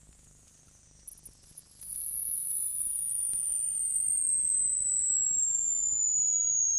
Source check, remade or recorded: remade